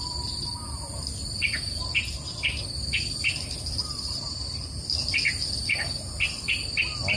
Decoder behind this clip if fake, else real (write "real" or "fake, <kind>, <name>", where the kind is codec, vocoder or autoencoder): real